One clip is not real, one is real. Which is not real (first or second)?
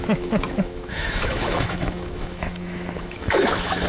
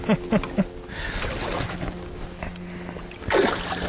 first